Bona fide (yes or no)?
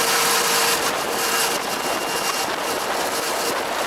yes